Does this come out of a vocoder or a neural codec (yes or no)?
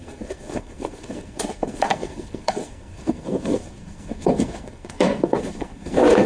yes